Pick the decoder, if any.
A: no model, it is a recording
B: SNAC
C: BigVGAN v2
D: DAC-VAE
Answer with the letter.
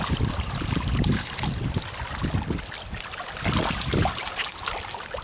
A